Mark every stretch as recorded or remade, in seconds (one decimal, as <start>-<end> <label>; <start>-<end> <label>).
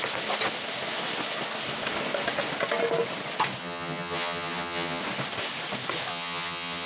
0.0-3.6 recorded; 3.6-5.0 remade; 5.0-6.1 recorded; 6.1-6.9 remade